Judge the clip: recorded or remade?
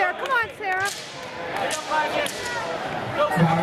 recorded